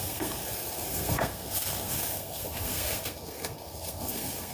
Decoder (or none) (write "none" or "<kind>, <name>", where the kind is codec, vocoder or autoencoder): codec, SNAC